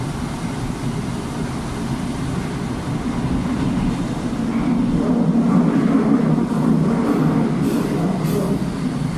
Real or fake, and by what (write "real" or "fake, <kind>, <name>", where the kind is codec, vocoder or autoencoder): real